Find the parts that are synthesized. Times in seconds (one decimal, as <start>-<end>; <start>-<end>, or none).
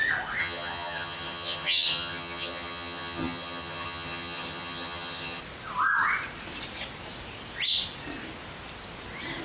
0.4-5.4